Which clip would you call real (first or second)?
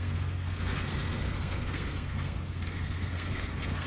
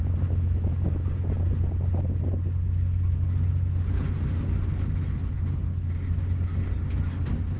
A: second